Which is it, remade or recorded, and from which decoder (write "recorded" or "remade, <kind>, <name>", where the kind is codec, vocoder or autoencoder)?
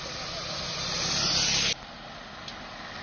recorded